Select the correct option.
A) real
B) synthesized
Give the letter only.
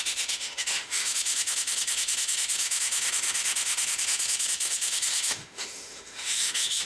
B